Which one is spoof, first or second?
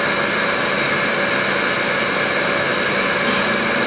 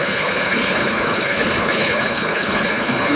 second